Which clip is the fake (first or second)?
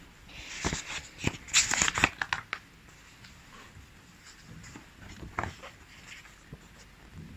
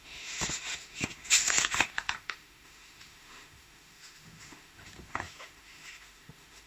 second